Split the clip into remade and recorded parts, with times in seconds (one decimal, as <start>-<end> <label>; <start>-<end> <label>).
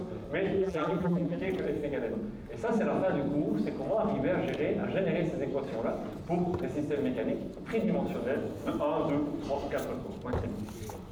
0.0-0.6 recorded; 0.6-1.4 remade; 1.4-11.1 recorded